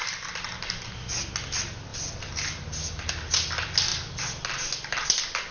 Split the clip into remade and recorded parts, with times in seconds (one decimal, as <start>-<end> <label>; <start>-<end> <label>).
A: 0.0-0.9 remade; 0.9-1.9 recorded; 1.9-3.1 remade; 3.1-5.5 recorded

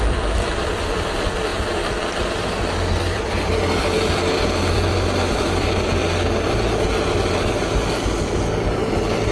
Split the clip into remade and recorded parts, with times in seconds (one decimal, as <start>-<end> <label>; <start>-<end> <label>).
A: 0.0-6.0 remade; 6.0-9.3 recorded